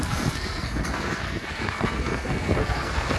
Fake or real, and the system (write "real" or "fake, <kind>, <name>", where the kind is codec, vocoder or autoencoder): fake, codec, SNAC